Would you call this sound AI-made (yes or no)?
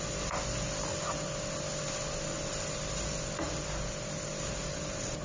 no